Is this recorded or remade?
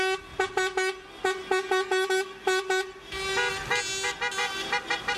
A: recorded